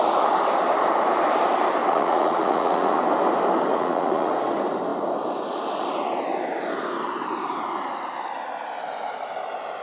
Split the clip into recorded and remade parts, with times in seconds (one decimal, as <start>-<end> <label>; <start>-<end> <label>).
0.0-1.8 recorded; 1.8-3.0 remade; 3.0-3.7 recorded; 3.7-4.3 remade; 4.3-9.8 recorded